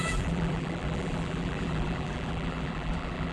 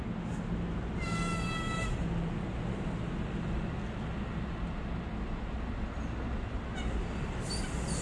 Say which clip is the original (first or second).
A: second